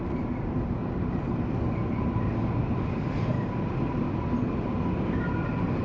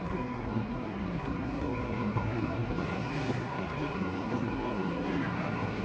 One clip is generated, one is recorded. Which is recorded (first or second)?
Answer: first